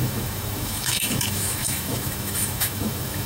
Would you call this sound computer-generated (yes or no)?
yes